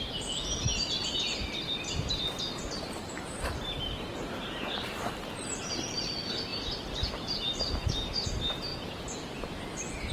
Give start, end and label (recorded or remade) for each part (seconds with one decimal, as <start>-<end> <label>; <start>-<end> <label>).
0.0-6.5 recorded; 6.5-8.1 remade; 8.1-10.1 recorded

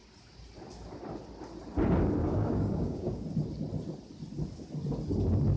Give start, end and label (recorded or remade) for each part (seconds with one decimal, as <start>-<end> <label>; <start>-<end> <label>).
0.0-2.2 recorded; 2.2-3.3 remade; 3.3-5.6 recorded